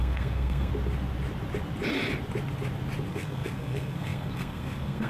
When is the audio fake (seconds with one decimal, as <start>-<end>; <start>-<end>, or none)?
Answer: 0.0-0.7; 3.1-5.1

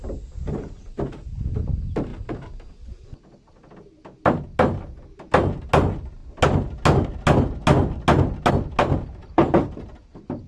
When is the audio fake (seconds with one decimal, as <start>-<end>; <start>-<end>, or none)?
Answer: 9.2-10.5

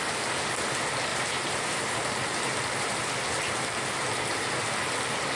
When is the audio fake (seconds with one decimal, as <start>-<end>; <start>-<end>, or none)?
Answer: 1.1-3.1